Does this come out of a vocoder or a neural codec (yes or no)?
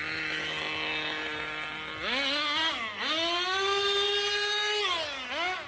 no